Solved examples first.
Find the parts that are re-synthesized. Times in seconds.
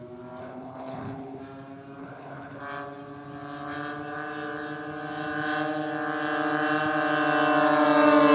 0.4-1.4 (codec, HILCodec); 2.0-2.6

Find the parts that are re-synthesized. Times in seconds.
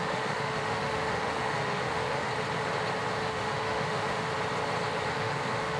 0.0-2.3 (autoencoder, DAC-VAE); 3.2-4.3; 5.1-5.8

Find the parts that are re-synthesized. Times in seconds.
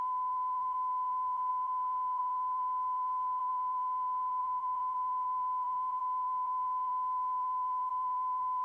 0.0-8.6 (vocoder, BigVGAN v2)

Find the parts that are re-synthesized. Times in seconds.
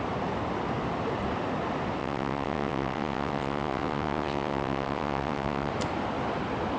2.0-5.7 (vocoder, WaveNeXt)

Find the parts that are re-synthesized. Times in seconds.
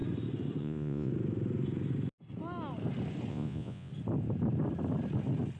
0.6-1.1 (vocoder, Vocos); 3.3-3.9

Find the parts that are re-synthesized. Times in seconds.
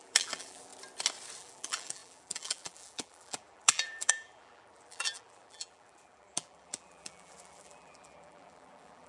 0.0-0.7 (vocoder, BigVGAN v2); 1.4-9.1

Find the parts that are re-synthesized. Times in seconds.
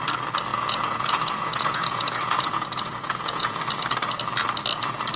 0.5-3.6 (vocoder, Vocos)